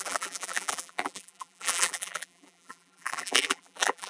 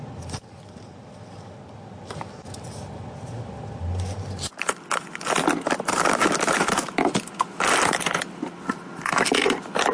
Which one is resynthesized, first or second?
first